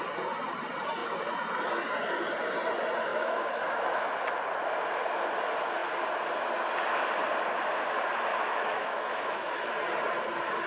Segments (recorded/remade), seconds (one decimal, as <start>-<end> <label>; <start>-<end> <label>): 0.0-3.1 recorded; 3.1-4.1 remade; 4.1-8.3 recorded; 8.3-9.7 remade; 9.7-10.7 recorded